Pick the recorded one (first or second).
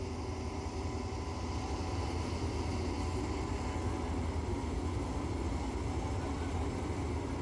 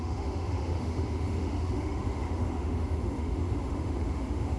first